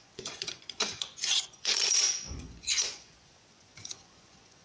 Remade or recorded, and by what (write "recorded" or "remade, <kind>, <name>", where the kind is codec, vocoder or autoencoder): remade, vocoder, Vocos